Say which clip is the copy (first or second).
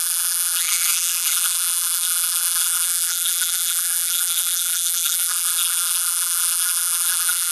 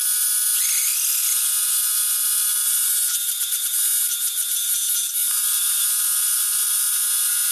first